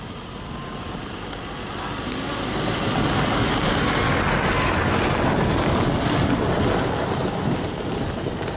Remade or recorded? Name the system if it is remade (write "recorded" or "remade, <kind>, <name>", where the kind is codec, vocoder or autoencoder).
recorded